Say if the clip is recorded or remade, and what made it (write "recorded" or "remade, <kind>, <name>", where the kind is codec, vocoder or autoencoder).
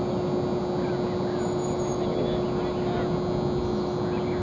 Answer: recorded